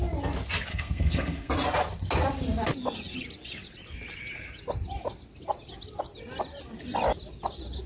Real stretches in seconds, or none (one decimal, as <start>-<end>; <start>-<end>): 0.0-0.7; 1.5-7.9